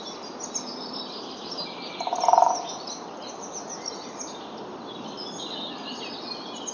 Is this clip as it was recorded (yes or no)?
yes